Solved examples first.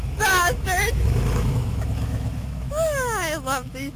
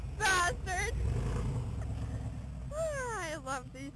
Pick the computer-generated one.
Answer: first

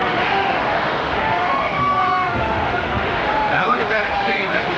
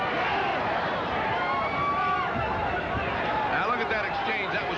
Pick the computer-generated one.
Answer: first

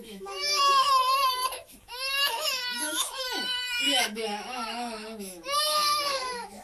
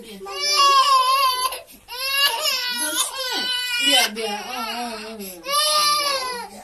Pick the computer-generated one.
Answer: first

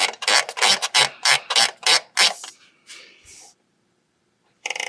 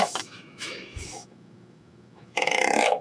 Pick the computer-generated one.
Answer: second